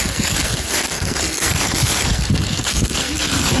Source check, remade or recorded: remade